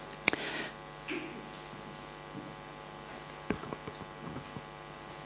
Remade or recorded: recorded